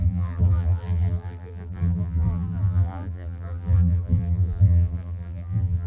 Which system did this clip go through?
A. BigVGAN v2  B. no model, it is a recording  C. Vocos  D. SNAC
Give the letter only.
A